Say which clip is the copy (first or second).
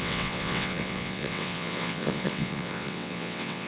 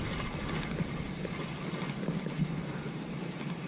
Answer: first